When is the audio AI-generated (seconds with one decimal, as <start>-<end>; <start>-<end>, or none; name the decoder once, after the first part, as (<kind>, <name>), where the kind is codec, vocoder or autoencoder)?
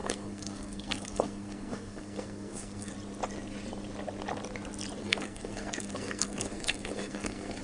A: 0.0-2.9 (codec, SNAC); 5.0-7.6